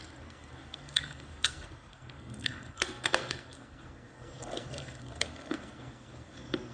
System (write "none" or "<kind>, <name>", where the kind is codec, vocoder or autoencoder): codec, SNAC